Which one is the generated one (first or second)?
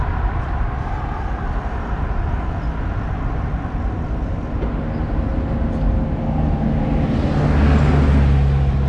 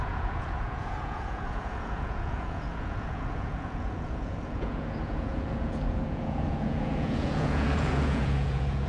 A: second